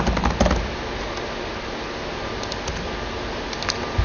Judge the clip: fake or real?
real